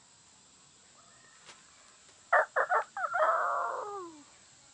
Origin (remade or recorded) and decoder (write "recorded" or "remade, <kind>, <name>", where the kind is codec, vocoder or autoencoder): recorded